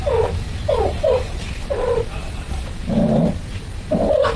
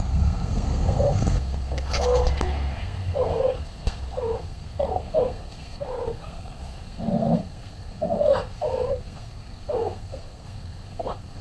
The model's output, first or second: second